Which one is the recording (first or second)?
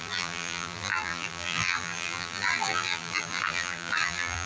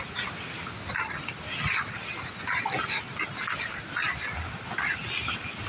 second